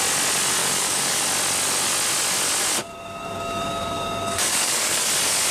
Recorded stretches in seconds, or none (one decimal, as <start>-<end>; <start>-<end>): 0.0-0.6; 1.2-2.8; 5.1-5.5